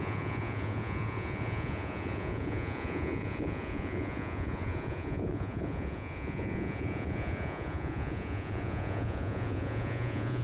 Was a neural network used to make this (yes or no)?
yes